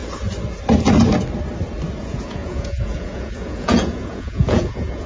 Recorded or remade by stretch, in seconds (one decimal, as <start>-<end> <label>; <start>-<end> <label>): 0.0-2.0 recorded; 2.0-5.1 remade